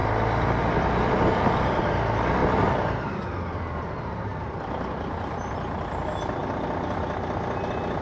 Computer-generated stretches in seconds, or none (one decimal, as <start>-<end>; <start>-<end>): 0.0-2.4; 4.0-6.4; 7.0-8.0